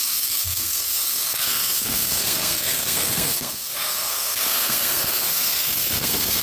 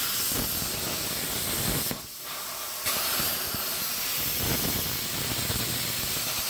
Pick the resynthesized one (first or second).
first